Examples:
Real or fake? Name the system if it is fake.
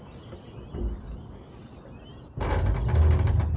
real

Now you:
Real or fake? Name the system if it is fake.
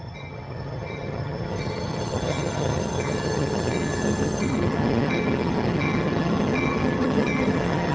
fake, vocoder, HiFi-GAN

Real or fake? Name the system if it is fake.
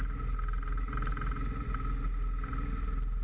real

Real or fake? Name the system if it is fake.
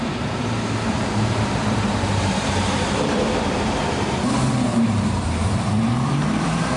fake, vocoder, BigVGAN v2